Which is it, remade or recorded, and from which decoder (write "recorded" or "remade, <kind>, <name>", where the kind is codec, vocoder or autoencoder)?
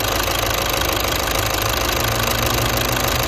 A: recorded